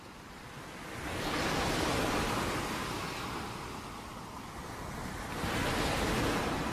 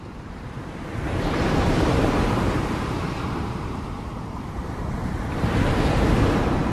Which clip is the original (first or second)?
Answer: first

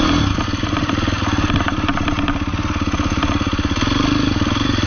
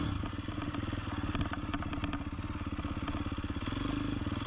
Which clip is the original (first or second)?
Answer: second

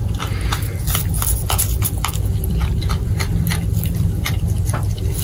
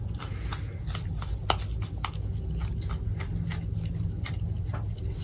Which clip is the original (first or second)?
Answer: second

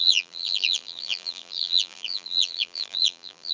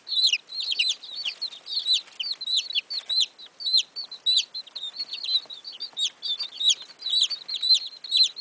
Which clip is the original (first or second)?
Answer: second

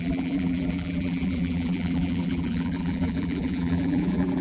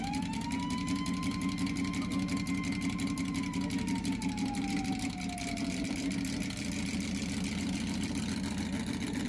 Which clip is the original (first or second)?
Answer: second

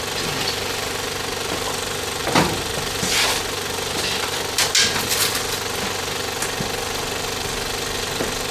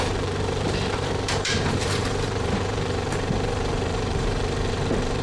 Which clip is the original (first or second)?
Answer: first